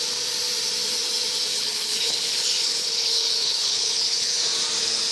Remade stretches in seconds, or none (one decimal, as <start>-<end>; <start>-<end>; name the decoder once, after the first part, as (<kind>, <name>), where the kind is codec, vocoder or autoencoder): 1.5-4.4 (codec, HILCodec)